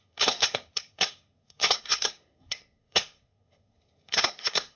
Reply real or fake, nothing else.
fake